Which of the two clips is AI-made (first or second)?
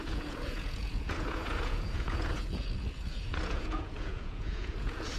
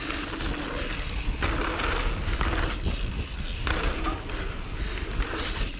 first